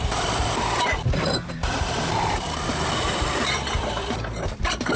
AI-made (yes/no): yes